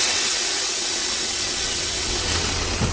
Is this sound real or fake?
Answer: fake